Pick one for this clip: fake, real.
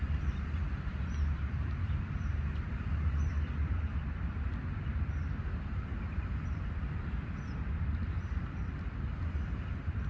fake